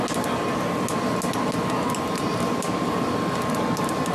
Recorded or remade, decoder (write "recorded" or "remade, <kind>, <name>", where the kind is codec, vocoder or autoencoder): recorded